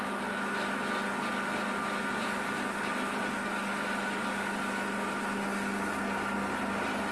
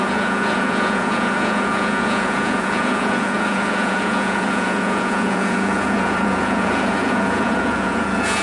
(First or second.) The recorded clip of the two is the first